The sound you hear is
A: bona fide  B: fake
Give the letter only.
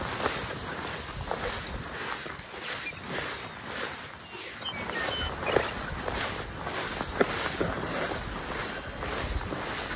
A